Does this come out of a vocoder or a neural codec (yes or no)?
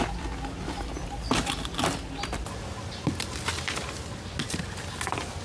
no